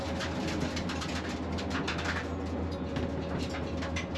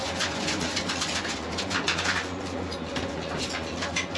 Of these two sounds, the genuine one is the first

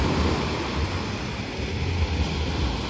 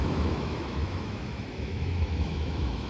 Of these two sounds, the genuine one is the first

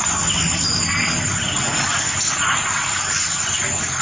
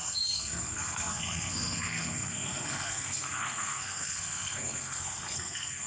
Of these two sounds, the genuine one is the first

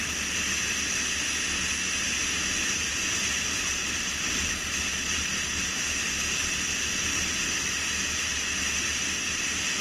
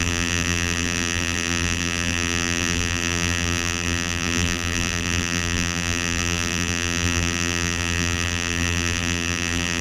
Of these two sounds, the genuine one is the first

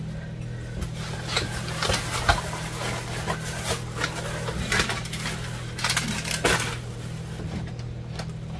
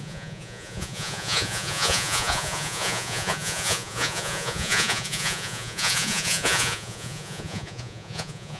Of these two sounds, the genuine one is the first